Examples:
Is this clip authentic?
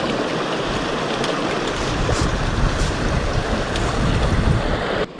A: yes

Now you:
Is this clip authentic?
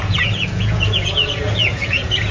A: no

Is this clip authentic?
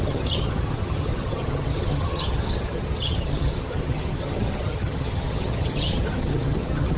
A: no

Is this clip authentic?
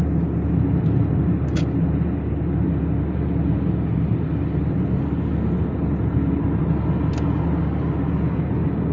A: yes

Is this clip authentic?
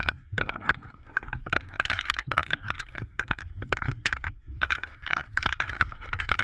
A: no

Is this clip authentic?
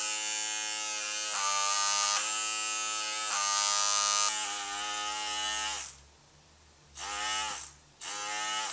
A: yes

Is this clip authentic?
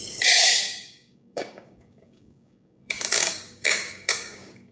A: no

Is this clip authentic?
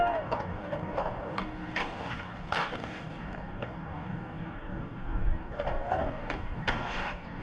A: no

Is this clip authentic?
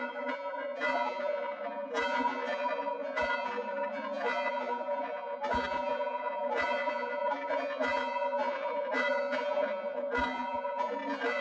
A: no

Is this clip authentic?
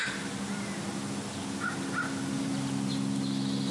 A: yes